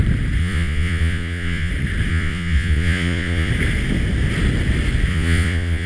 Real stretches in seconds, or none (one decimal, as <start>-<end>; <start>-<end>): 0.0-0.4; 1.7-2.1; 3.5-5.1